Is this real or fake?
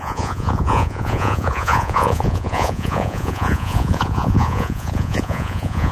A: fake